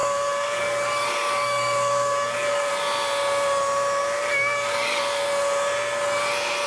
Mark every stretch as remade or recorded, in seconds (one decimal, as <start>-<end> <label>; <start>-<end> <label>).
0.0-2.7 remade; 2.7-4.0 recorded; 4.0-5.0 remade; 5.0-6.7 recorded